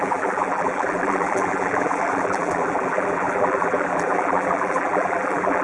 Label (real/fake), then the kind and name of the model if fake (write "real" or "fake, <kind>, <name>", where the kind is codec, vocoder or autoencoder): fake, vocoder, BigVGAN v2